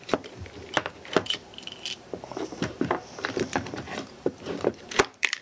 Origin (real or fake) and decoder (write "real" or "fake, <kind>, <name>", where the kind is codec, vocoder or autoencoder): fake, vocoder, BigVGAN v2